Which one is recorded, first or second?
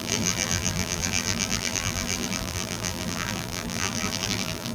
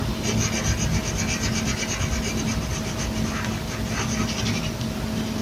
second